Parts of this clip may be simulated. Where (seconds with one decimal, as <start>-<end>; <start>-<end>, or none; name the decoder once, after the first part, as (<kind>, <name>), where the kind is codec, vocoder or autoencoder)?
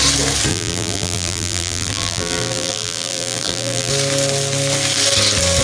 0.5-3.9 (vocoder, BigVGAN v2)